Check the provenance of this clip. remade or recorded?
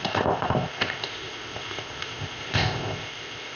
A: remade